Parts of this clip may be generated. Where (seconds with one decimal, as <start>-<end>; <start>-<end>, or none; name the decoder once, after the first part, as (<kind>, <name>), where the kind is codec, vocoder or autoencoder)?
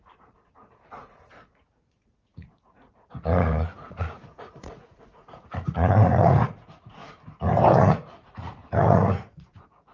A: 0.0-7.0 (vocoder, Vocos); 7.7-9.9